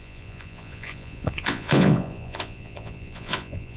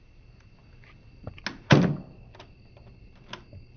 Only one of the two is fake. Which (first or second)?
first